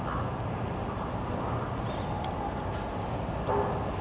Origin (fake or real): real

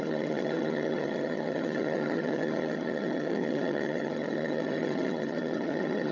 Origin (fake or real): fake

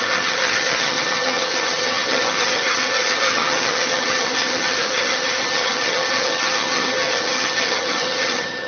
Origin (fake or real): fake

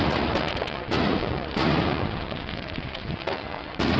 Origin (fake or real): fake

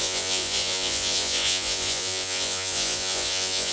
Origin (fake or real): fake